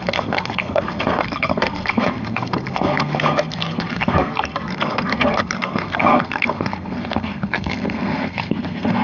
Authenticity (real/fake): fake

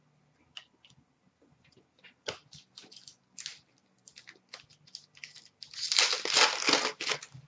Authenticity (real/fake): real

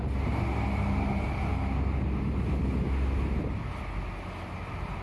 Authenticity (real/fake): real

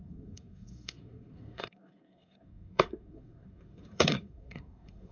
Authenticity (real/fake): fake